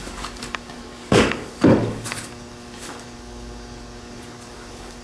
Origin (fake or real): fake